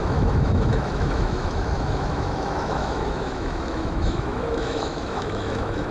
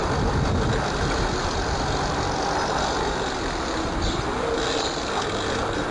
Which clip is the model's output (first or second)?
first